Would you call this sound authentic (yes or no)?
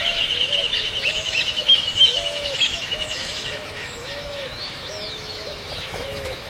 no